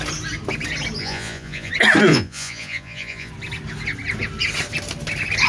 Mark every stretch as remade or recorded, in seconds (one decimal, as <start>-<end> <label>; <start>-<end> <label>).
0.0-1.0 recorded; 1.0-1.7 remade; 1.7-2.1 recorded; 2.1-3.3 remade; 3.3-5.5 recorded